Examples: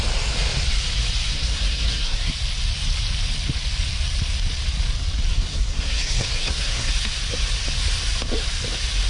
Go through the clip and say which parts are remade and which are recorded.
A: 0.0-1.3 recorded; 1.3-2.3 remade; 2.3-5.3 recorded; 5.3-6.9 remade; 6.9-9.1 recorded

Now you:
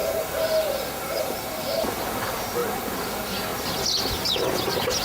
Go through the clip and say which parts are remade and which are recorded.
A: 0.0-5.0 recorded

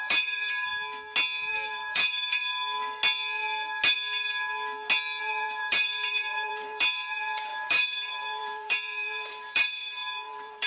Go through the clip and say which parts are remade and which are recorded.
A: 0.0-0.7 remade; 0.7-1.5 recorded; 1.5-2.4 remade; 2.4-5.2 recorded; 5.2-10.7 remade

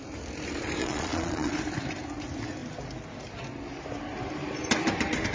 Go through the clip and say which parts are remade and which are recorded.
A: 0.0-0.8 recorded; 0.8-1.5 remade; 1.5-5.3 recorded

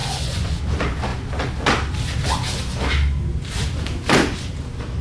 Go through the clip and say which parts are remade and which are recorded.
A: 0.0-0.6 remade; 0.6-5.0 recorded

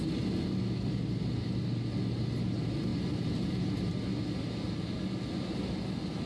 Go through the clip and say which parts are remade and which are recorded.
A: 0.0-2.9 recorded; 2.9-3.9 remade; 3.9-6.3 recorded

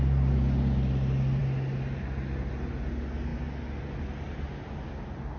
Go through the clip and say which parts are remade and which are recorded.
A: 0.0-5.4 recorded

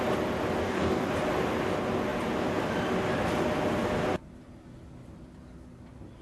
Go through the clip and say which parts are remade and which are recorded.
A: 0.0-0.6 recorded; 0.6-1.1 remade; 1.1-6.2 recorded